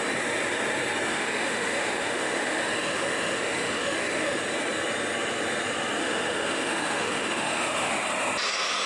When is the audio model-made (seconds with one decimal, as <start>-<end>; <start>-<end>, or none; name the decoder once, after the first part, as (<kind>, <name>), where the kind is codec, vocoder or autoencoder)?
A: 1.1-4.4 (autoencoder, DAC-VAE); 6.0-7.9